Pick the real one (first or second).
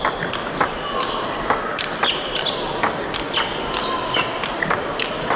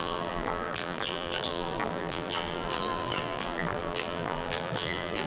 first